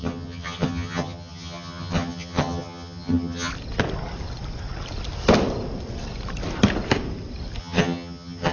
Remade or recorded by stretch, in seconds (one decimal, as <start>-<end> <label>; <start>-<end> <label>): 0.0-3.5 remade; 3.5-7.6 recorded; 7.6-8.5 remade